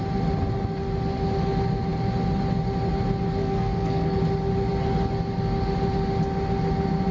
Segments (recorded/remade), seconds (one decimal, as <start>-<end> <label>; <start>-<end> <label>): 0.0-3.4 recorded; 3.4-4.2 remade; 4.2-7.1 recorded